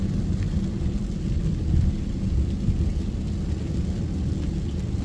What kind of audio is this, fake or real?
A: real